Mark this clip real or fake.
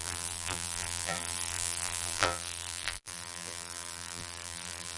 fake